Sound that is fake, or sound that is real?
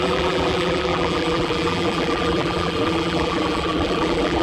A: fake